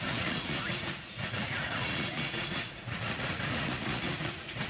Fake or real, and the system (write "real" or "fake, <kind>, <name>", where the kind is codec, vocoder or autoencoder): fake, vocoder, Vocos